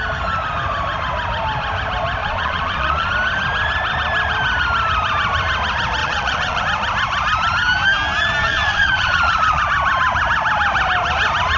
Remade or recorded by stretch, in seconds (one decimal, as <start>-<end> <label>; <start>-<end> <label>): 0.0-2.2 recorded; 2.2-3.1 remade; 3.1-6.0 recorded; 6.0-6.6 remade; 6.6-8.4 recorded; 8.4-9.6 remade; 9.6-11.6 recorded